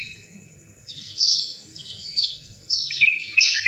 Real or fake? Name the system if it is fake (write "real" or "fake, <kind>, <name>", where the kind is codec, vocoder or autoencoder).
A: fake, codec, SNAC